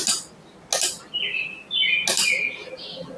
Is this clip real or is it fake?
real